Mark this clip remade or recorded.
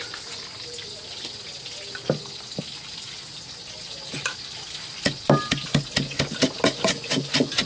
recorded